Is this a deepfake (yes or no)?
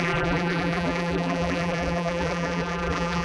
yes